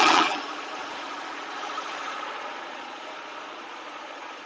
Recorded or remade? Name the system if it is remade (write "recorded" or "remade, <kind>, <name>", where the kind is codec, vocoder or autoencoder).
remade, vocoder, Vocos